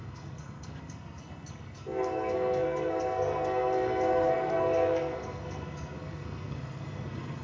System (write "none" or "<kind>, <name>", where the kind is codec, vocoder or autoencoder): codec, SNAC